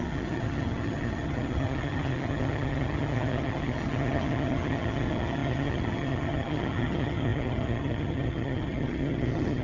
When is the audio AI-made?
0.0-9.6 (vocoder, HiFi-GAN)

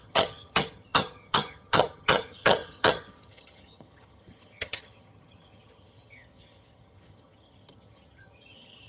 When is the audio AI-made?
0.0-8.9 (vocoder, HiFi-GAN)